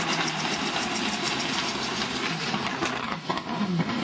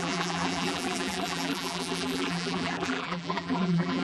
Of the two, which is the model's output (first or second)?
second